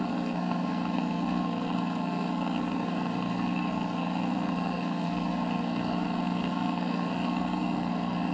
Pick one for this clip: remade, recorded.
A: remade